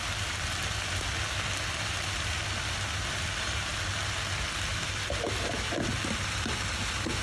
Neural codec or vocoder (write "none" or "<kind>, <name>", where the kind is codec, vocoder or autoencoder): none